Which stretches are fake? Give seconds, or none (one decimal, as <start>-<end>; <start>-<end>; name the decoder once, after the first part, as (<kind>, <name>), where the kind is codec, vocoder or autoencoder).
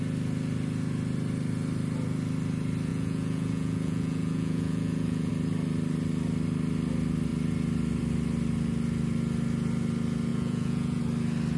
2.9-5.3 (vocoder, Vocos); 10.3-11.0